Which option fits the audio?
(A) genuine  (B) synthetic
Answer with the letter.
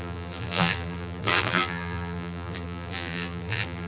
B